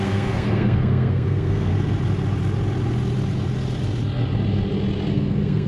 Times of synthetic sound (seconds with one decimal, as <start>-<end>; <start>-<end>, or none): 0.0-1.7; 5.1-5.7